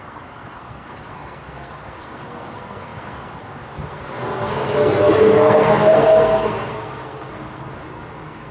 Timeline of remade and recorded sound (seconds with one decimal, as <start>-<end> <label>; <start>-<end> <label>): 0.0-8.5 remade